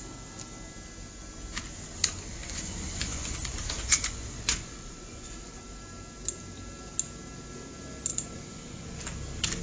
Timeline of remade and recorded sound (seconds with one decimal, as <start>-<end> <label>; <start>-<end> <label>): 0.0-2.3 recorded; 2.3-5.6 remade; 5.6-8.1 recorded; 8.1-9.0 remade; 9.0-9.6 recorded